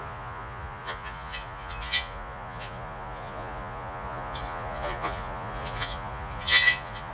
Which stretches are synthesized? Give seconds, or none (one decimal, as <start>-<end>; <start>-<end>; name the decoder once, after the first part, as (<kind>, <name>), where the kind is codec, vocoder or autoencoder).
0.0-7.1 (vocoder, Vocos)